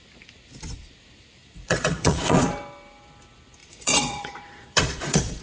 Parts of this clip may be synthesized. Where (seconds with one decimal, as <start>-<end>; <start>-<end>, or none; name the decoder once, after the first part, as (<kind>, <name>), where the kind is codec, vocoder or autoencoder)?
1.4-2.5 (vocoder, Vocos); 3.6-5.4